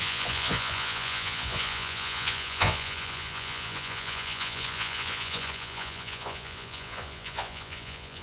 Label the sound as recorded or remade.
remade